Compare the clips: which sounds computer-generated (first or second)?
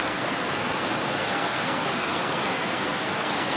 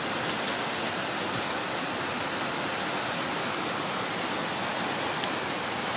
first